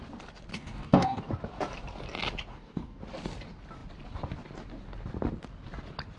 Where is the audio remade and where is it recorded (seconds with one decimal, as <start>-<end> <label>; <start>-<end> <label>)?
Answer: 0.0-0.5 recorded; 0.5-1.2 remade; 1.2-2.5 recorded; 2.5-3.0 remade; 3.0-6.2 recorded

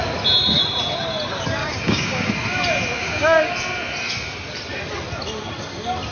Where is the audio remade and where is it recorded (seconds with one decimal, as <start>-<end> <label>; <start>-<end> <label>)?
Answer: 0.0-1.6 recorded; 1.6-2.3 remade; 2.3-3.0 recorded; 3.0-3.5 remade; 3.5-6.1 recorded

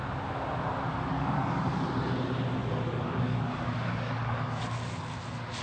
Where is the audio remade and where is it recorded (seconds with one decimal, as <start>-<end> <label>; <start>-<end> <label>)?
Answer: 0.0-1.1 recorded; 1.1-1.9 remade; 1.9-2.6 recorded; 2.6-4.7 remade; 4.7-5.6 recorded

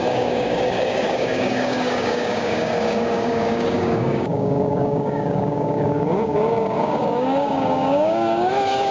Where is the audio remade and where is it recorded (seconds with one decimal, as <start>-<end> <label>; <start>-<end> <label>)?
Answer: 0.0-8.9 remade

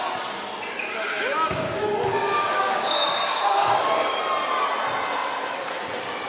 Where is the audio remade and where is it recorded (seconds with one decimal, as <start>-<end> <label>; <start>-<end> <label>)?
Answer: 0.0-1.1 recorded; 1.1-4.2 remade; 4.2-6.3 recorded

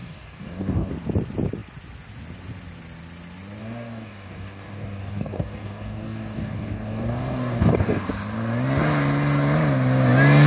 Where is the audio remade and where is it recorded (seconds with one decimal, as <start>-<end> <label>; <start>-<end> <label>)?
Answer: 0.0-0.9 remade; 0.9-3.6 recorded; 3.6-8.1 remade; 8.1-10.5 recorded

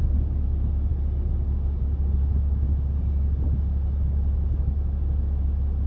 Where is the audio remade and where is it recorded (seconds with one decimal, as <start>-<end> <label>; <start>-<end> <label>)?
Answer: 0.0-5.9 recorded